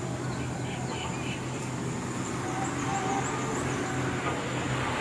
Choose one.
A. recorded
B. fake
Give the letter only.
A